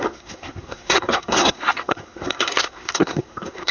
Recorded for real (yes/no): no